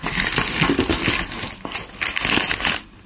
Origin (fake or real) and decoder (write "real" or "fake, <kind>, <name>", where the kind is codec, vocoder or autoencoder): real